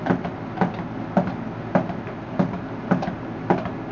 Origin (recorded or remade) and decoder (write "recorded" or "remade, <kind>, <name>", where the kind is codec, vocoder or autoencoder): recorded